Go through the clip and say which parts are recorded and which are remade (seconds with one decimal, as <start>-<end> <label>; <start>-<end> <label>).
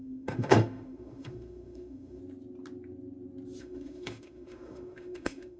0.0-2.2 remade; 2.2-3.6 recorded; 3.6-5.6 remade